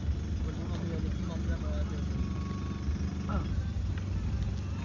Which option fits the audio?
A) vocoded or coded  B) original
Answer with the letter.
B